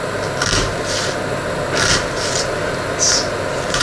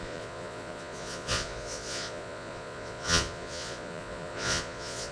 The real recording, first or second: first